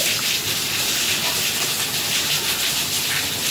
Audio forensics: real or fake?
real